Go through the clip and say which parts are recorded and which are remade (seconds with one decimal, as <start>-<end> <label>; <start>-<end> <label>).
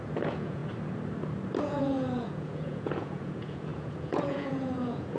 0.0-0.6 remade; 0.6-1.6 recorded; 1.6-5.2 remade